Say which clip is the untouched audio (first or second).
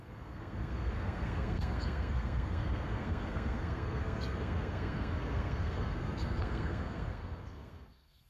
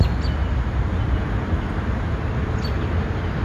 second